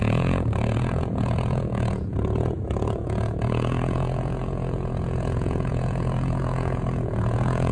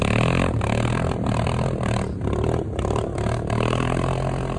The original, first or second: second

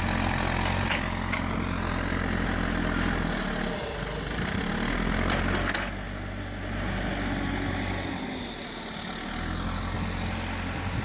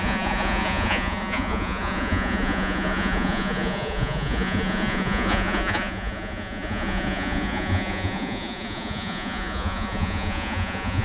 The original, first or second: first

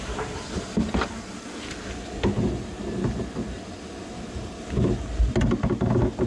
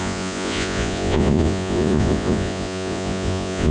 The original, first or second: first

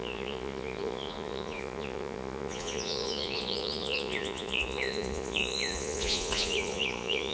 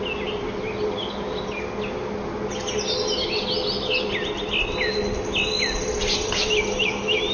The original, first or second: second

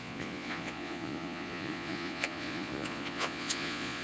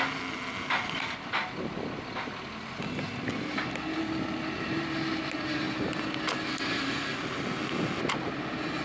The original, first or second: second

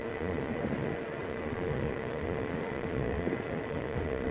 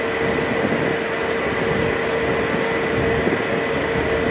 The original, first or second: second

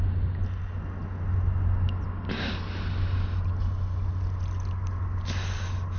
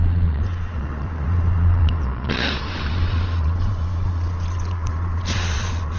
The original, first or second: first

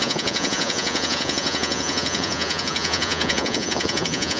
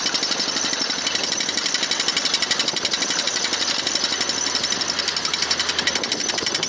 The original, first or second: second